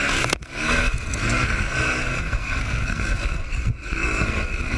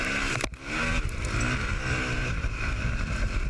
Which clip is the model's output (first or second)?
first